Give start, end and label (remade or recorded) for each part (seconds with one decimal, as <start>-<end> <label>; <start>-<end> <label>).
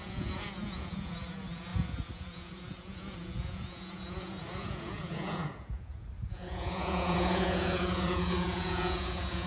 0.0-9.5 remade